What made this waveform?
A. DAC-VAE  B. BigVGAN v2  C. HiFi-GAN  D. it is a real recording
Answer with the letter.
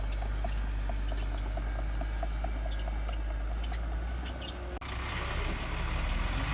D